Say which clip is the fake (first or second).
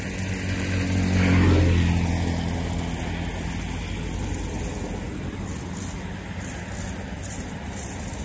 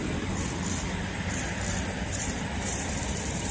second